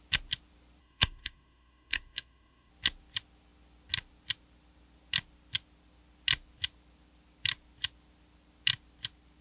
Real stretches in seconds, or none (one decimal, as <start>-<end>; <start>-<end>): 0.0-0.8; 2.7-9.4